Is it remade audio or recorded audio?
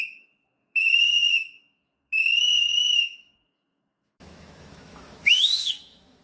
remade